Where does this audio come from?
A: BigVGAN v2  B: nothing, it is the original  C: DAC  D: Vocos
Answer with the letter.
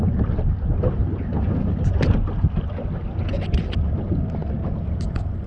B